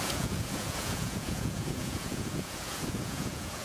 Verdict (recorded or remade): remade